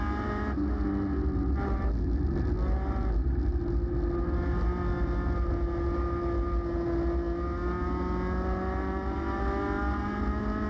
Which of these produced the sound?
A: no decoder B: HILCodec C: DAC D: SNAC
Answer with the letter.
A